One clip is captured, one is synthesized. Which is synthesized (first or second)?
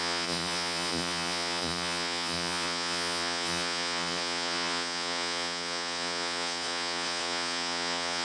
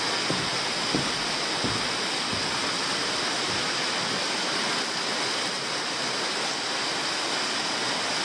first